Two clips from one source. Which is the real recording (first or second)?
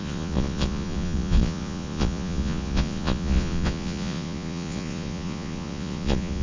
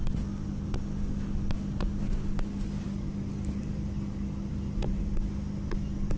second